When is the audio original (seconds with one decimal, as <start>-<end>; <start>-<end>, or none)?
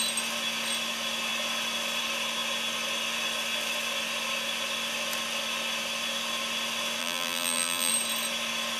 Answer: 0.0-7.0; 7.9-8.8